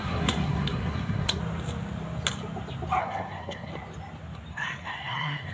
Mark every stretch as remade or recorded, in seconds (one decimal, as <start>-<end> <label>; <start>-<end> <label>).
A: 0.0-1.4 remade; 1.4-3.0 recorded; 3.0-3.7 remade; 3.7-4.5 recorded; 4.5-5.5 remade